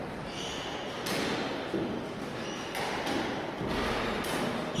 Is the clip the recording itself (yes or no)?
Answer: yes